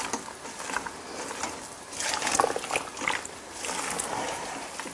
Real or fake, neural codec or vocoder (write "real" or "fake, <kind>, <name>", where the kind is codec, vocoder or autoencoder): real